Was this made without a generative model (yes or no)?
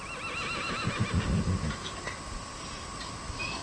yes